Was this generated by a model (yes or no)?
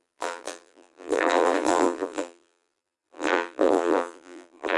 yes